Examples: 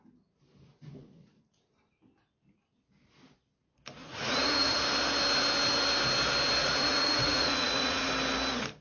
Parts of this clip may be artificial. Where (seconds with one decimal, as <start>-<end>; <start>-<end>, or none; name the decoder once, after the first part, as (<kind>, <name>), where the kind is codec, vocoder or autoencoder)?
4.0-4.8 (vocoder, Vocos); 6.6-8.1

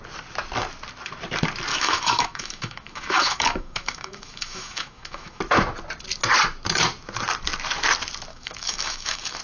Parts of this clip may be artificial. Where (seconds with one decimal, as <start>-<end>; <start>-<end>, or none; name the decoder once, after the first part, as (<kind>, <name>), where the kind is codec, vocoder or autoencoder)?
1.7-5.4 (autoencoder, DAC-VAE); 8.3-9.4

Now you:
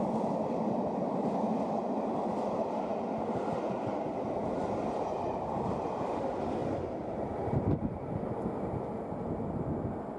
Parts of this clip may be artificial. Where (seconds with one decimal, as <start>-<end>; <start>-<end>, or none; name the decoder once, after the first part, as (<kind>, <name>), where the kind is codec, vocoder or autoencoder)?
none

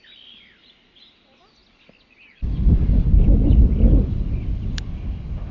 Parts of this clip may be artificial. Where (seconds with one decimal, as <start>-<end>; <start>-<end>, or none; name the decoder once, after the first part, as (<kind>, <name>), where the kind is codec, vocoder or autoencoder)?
none